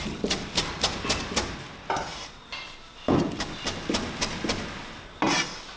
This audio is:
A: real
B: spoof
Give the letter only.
A